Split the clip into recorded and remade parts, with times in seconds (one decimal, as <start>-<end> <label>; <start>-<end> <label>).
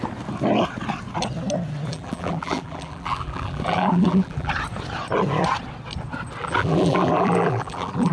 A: 0.0-1.9 recorded; 1.9-4.5 remade; 4.5-6.4 recorded; 6.4-8.1 remade